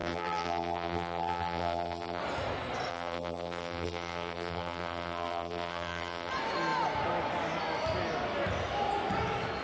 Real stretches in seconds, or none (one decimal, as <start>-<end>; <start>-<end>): 2.2-2.9; 6.3-9.6